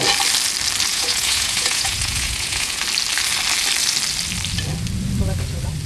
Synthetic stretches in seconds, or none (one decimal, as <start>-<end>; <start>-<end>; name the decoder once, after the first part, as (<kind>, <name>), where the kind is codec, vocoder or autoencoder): 0.9-2.8 (vocoder, Vocos)